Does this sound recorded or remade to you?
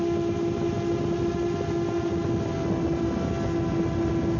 recorded